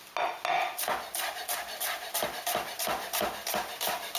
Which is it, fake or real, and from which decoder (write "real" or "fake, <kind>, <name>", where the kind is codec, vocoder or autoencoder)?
real